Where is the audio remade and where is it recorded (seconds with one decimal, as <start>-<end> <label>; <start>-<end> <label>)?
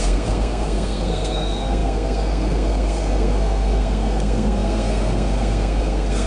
0.0-6.3 remade